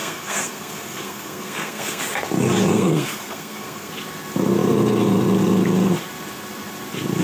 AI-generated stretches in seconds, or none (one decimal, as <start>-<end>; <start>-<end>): 0.0-2.0; 2.7-3.9